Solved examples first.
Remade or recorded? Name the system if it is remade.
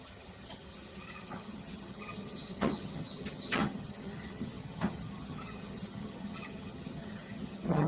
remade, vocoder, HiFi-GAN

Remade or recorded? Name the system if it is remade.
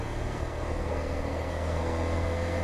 remade, codec, SNAC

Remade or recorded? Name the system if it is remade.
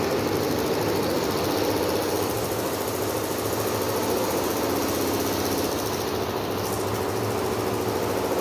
recorded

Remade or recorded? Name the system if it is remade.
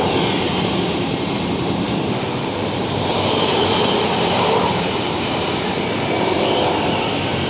remade, vocoder, BigVGAN v2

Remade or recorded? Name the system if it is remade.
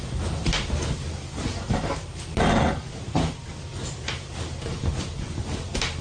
recorded